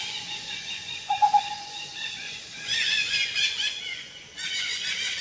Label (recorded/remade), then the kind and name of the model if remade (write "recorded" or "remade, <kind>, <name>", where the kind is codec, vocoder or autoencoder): remade, vocoder, Vocos